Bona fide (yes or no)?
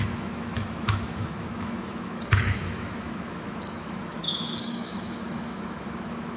no